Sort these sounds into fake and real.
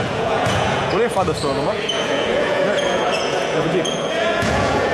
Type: fake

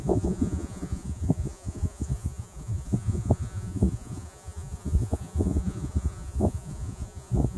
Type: fake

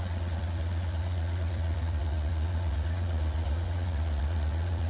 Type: fake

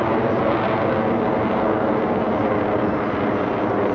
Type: real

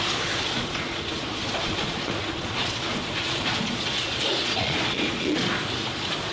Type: fake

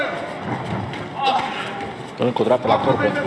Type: real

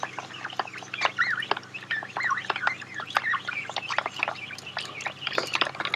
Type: real